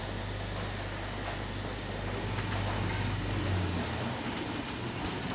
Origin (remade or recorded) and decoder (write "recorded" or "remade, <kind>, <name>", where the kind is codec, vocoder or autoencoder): recorded